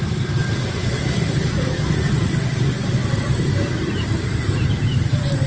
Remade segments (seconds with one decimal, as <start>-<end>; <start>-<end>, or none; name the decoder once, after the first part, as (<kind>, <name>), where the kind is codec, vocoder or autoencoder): 0.0-5.5 (vocoder, BigVGAN v2)